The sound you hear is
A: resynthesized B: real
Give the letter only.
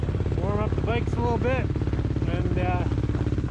B